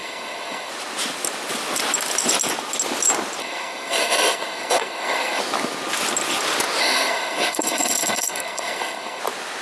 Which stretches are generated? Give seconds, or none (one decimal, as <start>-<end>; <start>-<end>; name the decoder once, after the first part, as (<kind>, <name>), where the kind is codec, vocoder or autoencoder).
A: 0.0-0.7 (codec, SNAC); 3.4-5.4; 6.8-9.2